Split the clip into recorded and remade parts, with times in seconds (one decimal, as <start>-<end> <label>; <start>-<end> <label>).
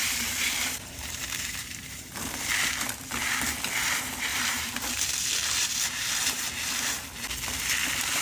0.0-2.5 remade; 2.5-4.3 recorded; 4.3-6.1 remade; 6.1-8.2 recorded